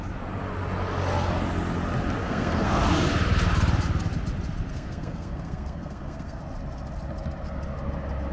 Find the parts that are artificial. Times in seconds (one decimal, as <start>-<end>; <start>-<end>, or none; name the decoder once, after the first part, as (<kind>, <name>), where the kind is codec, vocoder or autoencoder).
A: 2.2-2.8 (codec, SNAC); 4.7-6.4